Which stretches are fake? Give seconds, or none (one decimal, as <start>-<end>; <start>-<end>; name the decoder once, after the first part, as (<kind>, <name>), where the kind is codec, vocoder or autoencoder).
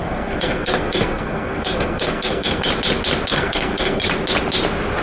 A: 0.0-2.7 (codec, SNAC); 3.3-4.0